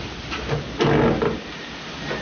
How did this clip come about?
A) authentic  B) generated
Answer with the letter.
A